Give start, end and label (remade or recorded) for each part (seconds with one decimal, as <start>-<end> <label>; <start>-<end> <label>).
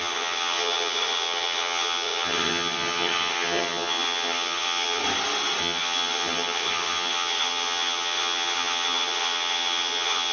0.0-5.0 remade; 5.0-5.6 recorded; 5.6-10.3 remade